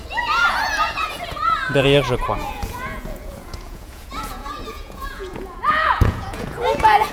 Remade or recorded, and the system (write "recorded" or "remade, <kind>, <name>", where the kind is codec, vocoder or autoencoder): remade, vocoder, Vocos